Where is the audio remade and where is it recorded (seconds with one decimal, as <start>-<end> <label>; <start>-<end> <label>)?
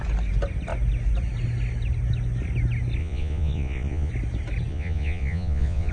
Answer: 0.0-3.0 recorded; 3.0-4.1 remade; 4.1-4.7 recorded; 4.7-5.9 remade